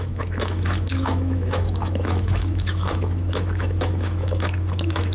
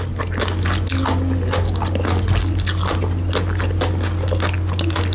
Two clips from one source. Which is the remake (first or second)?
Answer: first